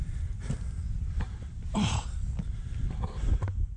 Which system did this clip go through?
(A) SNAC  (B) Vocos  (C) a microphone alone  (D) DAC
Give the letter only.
C